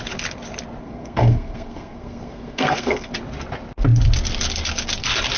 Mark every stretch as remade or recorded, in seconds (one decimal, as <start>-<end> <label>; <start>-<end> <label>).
0.0-0.8 recorded; 0.8-3.1 remade; 3.1-5.4 recorded